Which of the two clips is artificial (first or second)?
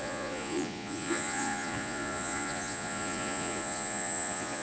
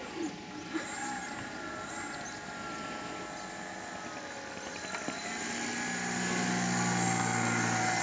first